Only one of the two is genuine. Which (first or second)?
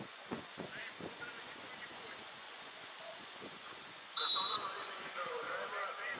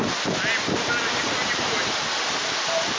second